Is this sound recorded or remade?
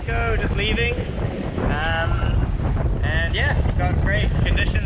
recorded